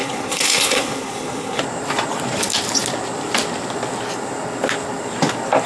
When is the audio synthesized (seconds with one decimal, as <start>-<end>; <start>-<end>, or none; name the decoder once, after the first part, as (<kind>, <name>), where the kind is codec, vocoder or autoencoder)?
0.0-1.6 (codec, HILCodec)